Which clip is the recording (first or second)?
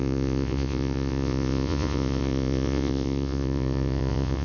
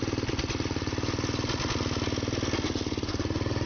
second